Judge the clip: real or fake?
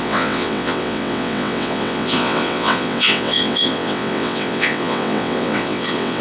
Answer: fake